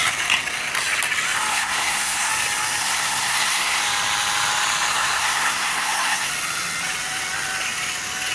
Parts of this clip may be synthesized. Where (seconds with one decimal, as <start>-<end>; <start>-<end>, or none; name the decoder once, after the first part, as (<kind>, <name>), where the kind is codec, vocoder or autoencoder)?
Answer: 1.5-2.3 (codec, SNAC); 2.8-3.8; 4.9-6.3